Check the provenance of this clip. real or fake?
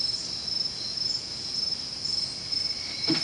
real